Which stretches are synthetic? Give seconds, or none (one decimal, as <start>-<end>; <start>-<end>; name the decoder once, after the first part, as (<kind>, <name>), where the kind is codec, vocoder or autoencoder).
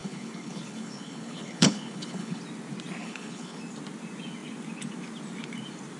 0.0-2.4 (codec, HILCodec); 3.0-3.6